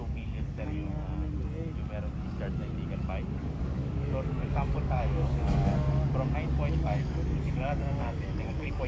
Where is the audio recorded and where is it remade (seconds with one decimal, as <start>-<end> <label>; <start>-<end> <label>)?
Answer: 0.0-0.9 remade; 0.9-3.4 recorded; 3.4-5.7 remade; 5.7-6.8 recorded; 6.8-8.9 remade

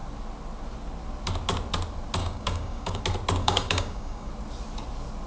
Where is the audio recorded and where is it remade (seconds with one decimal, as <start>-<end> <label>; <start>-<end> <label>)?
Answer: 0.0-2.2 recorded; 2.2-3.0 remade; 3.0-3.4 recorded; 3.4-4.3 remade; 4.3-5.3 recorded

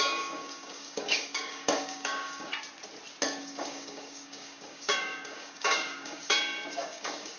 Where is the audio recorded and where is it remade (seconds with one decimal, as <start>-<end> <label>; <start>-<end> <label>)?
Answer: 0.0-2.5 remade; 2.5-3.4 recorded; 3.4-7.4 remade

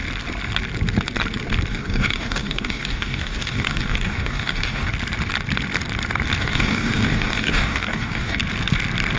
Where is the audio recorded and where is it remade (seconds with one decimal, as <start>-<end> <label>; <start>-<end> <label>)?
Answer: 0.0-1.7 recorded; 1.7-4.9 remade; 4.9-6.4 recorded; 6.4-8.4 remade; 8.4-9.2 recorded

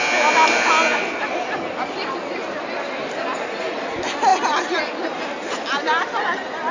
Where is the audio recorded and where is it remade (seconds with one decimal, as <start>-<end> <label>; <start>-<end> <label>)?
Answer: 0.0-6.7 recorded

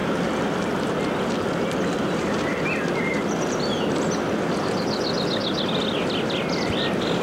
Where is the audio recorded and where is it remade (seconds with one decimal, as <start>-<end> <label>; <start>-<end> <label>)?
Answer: 0.0-7.2 recorded

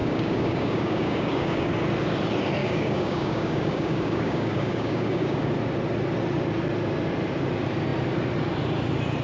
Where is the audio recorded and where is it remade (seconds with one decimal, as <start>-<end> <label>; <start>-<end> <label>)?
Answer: 0.0-1.7 remade; 1.7-2.6 recorded; 2.6-5.5 remade; 5.5-9.2 recorded